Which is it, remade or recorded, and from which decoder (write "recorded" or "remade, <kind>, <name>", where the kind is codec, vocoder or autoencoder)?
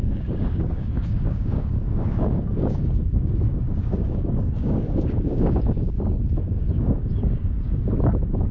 remade, codec, DAC